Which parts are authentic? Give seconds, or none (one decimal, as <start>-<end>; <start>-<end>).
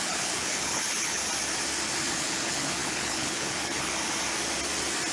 1.2-2.0; 3.9-5.1